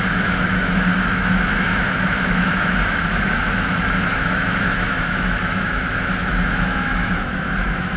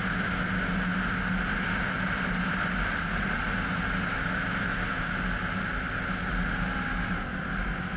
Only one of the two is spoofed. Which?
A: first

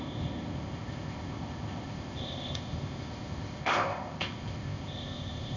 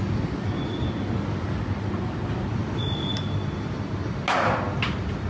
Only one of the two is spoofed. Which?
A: first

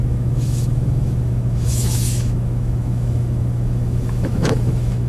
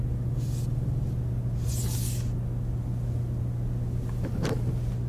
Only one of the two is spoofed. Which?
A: first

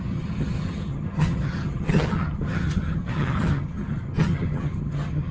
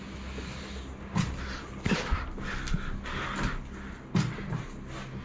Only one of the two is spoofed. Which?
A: first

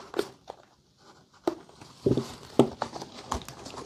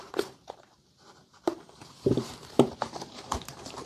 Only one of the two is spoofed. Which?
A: second